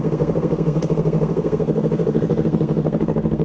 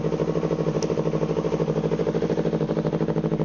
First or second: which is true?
second